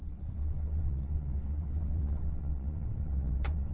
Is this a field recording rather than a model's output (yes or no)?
no